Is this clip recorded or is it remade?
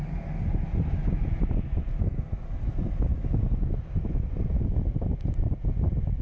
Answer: recorded